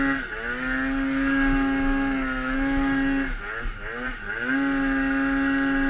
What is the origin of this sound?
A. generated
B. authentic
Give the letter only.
B